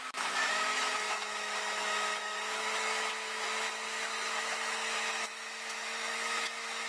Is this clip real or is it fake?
fake